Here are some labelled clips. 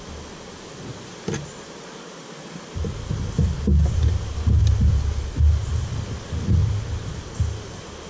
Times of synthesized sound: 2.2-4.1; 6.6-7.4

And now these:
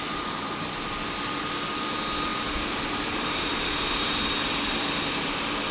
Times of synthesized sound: none

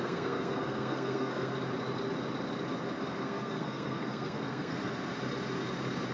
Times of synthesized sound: 0.0-1.5; 3.2-5.1

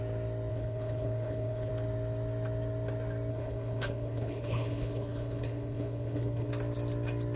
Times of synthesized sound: 0.5-1.7; 3.3-6.5

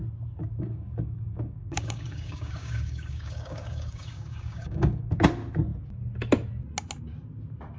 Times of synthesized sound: 0.4-5.1

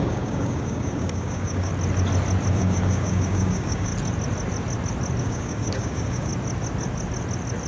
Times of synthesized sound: 0.0-1.7; 2.5-3.9; 5.2-6.3

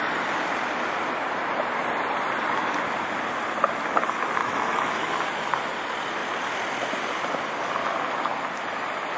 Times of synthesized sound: 4.4-5.1